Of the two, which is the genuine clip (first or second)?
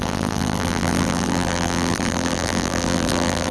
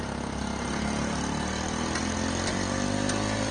second